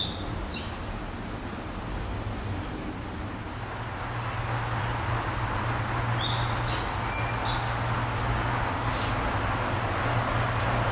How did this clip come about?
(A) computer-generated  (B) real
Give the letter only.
B